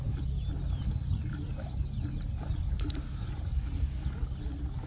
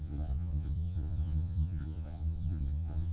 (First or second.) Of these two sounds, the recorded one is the first